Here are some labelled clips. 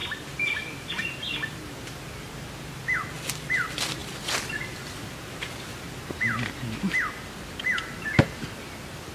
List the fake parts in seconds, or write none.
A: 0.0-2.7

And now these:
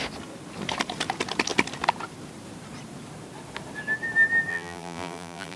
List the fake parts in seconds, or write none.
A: 4.5-5.6

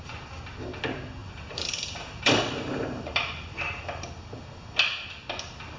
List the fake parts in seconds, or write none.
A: 1.2-4.1